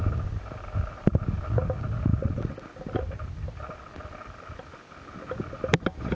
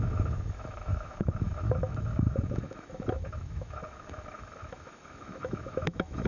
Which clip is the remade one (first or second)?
second